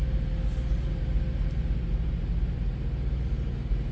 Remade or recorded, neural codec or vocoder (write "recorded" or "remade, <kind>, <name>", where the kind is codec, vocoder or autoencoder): recorded